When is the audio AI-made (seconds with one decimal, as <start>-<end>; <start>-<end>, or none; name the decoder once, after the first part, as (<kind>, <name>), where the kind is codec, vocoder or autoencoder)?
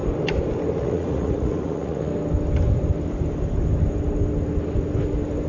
0.8-2.1 (vocoder, Vocos)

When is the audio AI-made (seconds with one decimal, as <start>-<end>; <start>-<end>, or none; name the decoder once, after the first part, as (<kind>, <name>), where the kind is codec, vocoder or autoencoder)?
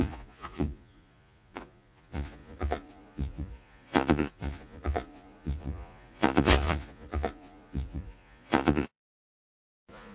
0.0-10.1 (vocoder, Vocos)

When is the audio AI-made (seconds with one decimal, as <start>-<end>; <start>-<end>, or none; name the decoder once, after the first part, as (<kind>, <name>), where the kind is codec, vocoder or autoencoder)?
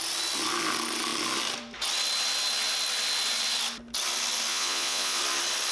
4.5-5.2 (vocoder, Vocos)